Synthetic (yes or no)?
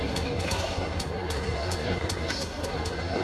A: yes